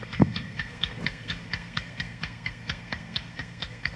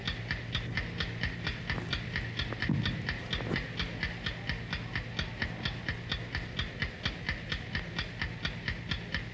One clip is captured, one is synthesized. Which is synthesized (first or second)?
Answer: first